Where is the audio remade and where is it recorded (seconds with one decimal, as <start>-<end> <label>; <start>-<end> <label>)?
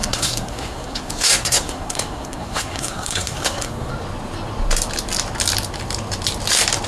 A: 0.0-3.9 remade; 3.9-6.9 recorded